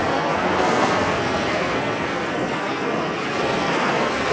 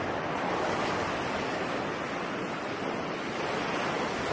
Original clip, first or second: second